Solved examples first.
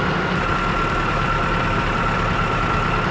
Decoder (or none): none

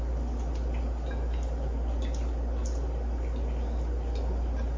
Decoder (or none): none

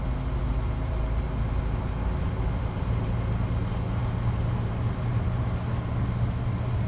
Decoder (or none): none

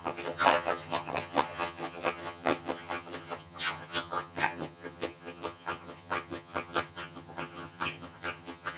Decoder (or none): vocoder, HiFi-GAN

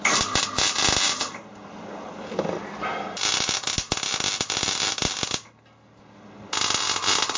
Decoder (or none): none